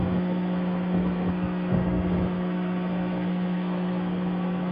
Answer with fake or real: fake